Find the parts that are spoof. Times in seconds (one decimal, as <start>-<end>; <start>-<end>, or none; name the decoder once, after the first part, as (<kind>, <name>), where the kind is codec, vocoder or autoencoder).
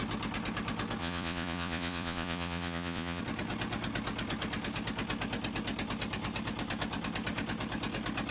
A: 1.0-3.2 (vocoder, Vocos)